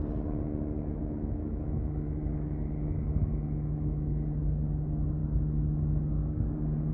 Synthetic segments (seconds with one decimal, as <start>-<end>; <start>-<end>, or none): 1.0-4.1; 5.2-6.5